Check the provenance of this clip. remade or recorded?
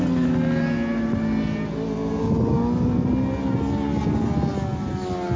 recorded